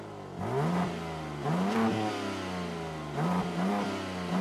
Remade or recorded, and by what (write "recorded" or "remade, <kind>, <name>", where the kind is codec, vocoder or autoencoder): recorded